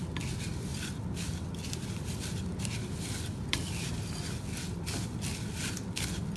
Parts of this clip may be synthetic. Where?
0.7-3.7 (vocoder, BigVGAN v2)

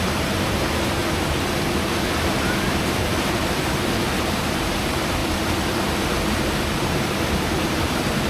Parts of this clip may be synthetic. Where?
0.0-1.0 (vocoder, BigVGAN v2); 2.2-5.2; 6.4-8.3

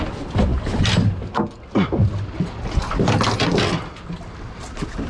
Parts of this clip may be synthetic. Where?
none

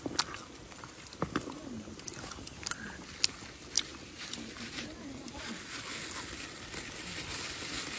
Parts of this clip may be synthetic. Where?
3.9-5.6 (vocoder, BigVGAN v2)

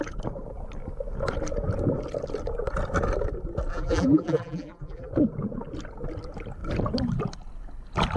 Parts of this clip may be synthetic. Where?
3.7-5.1 (vocoder, BigVGAN v2)

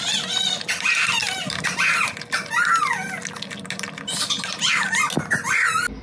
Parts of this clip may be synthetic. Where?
1.2-1.9 (vocoder, BigVGAN v2)

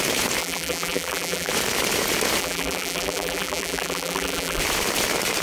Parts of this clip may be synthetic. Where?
0.4-1.5 (vocoder, BigVGAN v2); 2.4-4.6